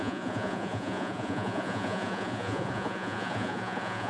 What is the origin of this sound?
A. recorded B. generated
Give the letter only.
B